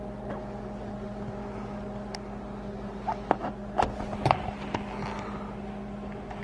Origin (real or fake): real